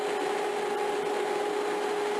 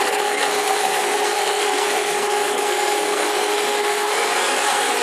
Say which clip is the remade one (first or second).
second